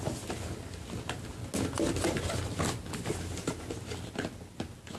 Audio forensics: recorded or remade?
recorded